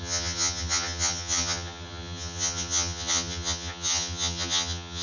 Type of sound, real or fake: fake